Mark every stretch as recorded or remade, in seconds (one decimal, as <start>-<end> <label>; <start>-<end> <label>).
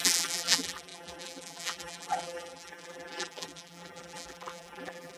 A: 0.0-5.2 remade